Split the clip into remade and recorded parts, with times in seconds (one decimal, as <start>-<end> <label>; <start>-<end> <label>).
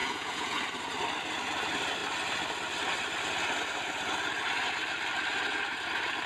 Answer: 0.0-0.6 remade; 0.6-6.3 recorded